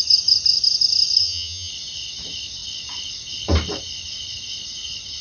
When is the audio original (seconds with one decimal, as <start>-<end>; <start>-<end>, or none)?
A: 0.0-1.2; 1.7-5.2